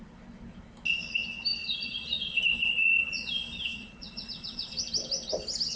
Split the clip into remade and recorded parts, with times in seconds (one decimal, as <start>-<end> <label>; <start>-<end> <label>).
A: 0.0-1.6 recorded; 1.6-2.4 remade; 2.4-2.8 recorded; 2.8-3.3 remade; 3.3-3.7 recorded; 3.7-4.8 remade; 4.8-5.8 recorded